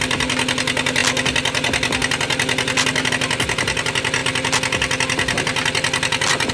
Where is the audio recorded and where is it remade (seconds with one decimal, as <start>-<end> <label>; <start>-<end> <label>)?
0.0-6.5 recorded

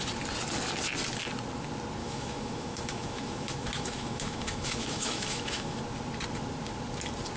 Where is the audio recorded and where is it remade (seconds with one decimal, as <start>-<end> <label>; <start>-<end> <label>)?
0.0-2.0 recorded; 2.0-5.8 remade; 5.8-7.4 recorded